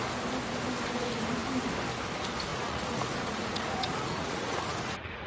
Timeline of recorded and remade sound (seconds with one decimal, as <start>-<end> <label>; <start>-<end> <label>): 0.0-2.5 recorded; 2.5-5.3 remade